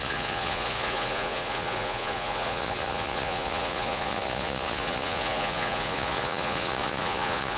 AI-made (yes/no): yes